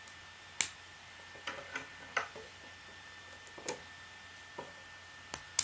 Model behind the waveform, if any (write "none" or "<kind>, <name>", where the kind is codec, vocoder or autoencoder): none